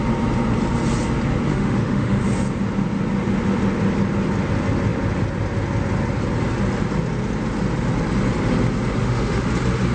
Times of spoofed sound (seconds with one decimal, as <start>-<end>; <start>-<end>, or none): 1.5-2.2; 9.0-9.5